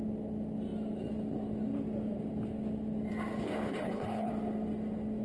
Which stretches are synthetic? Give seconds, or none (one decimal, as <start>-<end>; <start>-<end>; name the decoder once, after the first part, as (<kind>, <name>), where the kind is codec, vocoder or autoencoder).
3.7-4.3 (codec, HILCodec)